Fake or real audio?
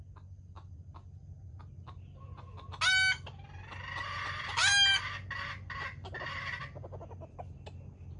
real